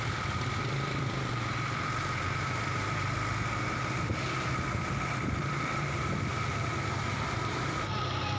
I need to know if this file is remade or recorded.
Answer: remade